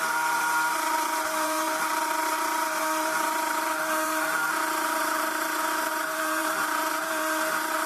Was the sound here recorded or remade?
remade